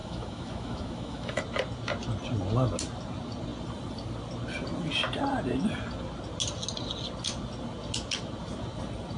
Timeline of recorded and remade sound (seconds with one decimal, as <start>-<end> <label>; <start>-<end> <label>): 0.0-1.4 remade; 1.4-9.2 recorded

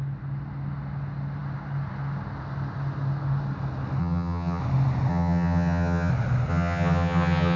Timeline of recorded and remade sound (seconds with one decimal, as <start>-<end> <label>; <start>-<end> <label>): 0.0-4.0 recorded; 4.0-4.6 remade; 4.6-5.1 recorded; 5.1-6.1 remade; 6.1-6.5 recorded; 6.5-7.6 remade

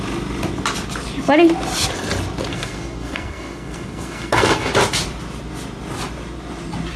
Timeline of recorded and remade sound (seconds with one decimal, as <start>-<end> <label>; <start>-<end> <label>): 0.0-2.5 recorded; 2.5-4.7 remade; 4.7-7.0 recorded

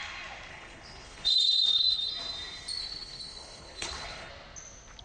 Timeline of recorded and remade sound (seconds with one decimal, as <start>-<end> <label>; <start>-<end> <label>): 0.0-0.5 recorded; 0.5-2.1 remade; 2.1-2.8 recorded; 2.8-4.3 remade; 4.3-5.0 recorded

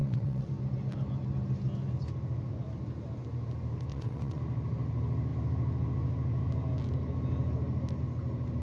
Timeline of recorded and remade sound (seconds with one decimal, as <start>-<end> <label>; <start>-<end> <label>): 0.0-0.5 remade; 0.5-3.9 recorded; 3.9-4.4 remade; 4.4-8.6 recorded

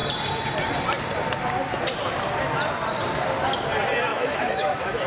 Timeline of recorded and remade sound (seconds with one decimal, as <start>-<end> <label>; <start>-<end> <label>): 0.0-4.1 recorded; 4.1-5.1 remade

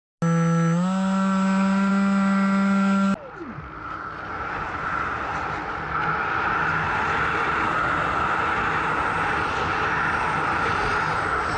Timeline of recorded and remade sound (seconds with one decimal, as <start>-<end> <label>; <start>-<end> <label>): 0.0-11.6 recorded

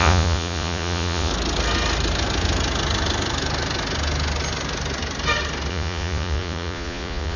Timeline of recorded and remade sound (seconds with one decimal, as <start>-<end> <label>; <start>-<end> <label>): 0.0-1.3 remade; 1.3-5.7 recorded; 5.7-7.4 remade